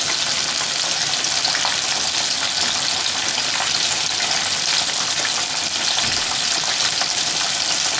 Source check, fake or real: real